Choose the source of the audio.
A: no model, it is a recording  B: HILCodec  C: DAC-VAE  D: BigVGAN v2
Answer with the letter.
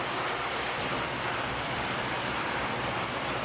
D